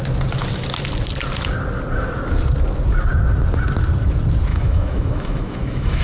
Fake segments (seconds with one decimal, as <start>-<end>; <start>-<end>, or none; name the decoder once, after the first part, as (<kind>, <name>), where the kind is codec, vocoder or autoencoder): 4.5-6.0 (autoencoder, DAC-VAE)